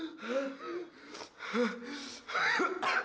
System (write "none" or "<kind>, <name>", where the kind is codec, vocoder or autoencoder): none